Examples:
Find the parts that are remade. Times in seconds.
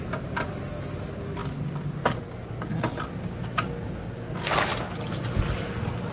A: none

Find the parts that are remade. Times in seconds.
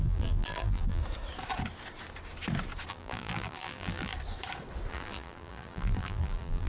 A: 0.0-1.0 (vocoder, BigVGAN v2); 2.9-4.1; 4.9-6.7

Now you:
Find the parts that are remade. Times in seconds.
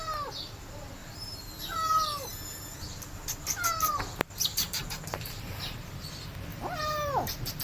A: 1.0-2.8 (vocoder, BigVGAN v2); 4.5-6.0; 6.5-7.6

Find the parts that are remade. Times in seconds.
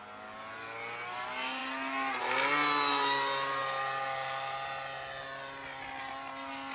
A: none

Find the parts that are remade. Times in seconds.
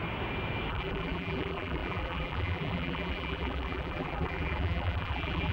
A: 0.7-5.5 (vocoder, BigVGAN v2)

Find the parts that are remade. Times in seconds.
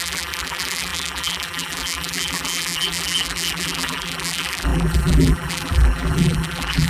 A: 0.0-6.9 (vocoder, BigVGAN v2)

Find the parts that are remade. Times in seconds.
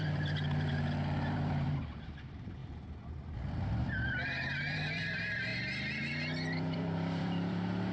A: 0.0-2.6 (vocoder, BigVGAN v2); 3.7-5.5; 6.0-7.9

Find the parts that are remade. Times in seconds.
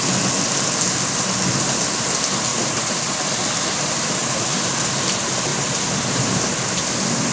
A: 2.5-3.3 (vocoder, BigVGAN v2); 4.2-4.8; 5.5-6.5